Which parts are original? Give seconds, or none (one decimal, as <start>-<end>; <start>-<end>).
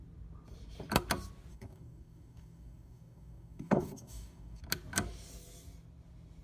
0.0-1.5; 4.6-6.4